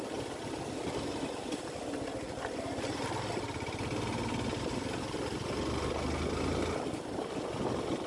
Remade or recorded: recorded